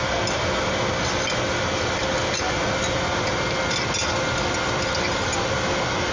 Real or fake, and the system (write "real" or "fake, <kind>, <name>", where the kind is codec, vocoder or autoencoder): real